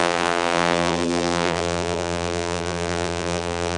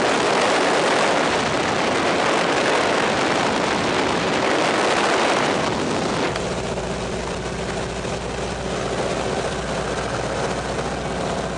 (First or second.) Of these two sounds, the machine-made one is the first